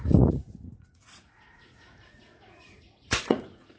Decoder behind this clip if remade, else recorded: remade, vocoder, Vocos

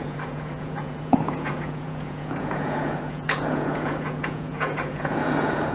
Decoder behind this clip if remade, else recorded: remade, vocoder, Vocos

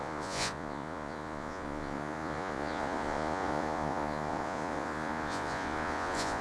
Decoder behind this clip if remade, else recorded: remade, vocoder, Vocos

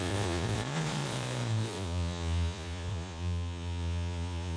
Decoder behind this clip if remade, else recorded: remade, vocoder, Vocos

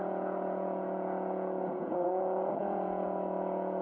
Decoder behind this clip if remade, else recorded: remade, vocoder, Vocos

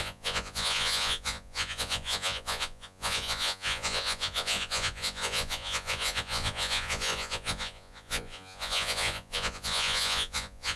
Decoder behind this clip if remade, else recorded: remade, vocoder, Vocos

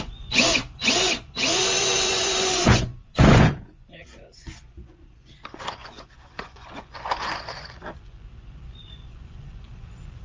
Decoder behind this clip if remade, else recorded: remade, vocoder, Vocos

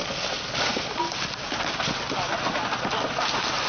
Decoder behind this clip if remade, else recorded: recorded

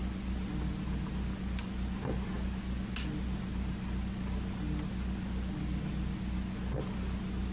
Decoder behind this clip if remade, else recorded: recorded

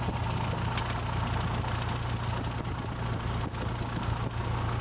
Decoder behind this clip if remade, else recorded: recorded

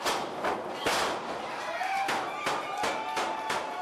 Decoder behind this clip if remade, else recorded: recorded